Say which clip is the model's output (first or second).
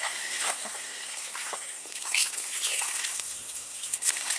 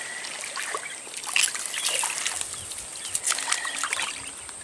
first